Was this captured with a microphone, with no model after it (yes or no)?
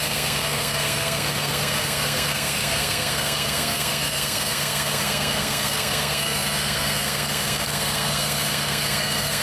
no